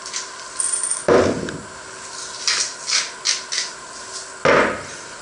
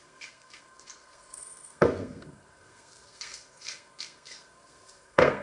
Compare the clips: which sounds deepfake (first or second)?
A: second